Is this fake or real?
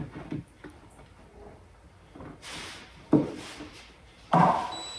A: real